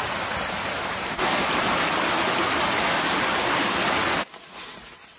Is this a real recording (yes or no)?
yes